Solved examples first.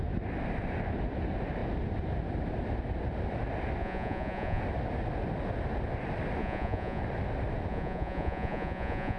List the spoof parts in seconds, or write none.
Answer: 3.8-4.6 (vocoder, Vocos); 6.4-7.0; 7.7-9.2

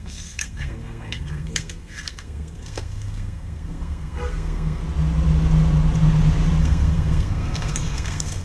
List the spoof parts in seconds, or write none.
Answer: 0.0-4.8 (codec, SNAC); 6.6-8.4

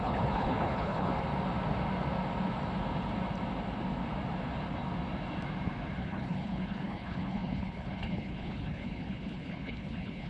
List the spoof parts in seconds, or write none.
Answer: 0.0-1.1 (codec, HILCodec); 6.0-10.3